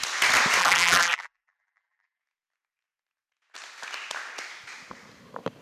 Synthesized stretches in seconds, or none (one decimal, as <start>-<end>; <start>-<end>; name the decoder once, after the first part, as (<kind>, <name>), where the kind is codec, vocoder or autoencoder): 0.6-2.2 (vocoder, BigVGAN v2)